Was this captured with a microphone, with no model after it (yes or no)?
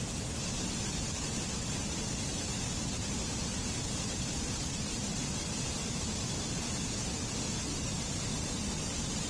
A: yes